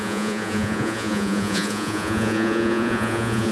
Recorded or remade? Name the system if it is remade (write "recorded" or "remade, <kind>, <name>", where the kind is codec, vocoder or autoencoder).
remade, vocoder, Vocos